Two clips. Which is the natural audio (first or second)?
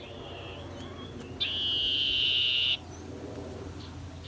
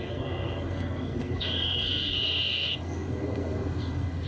first